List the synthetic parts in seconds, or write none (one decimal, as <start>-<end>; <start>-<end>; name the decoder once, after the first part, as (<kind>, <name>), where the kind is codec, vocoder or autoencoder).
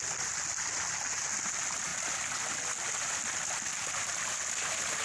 none